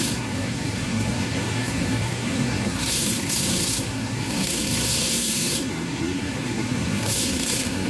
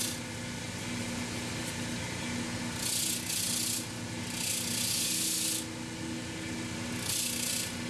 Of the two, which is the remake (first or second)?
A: first